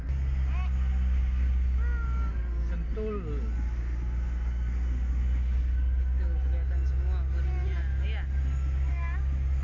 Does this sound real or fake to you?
real